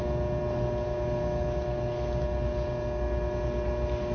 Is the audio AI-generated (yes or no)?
no